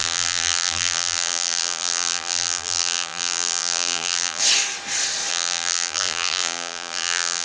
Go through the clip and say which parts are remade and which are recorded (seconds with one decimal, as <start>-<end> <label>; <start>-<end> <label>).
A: 0.0-4.4 remade; 4.4-5.3 recorded; 5.3-7.4 remade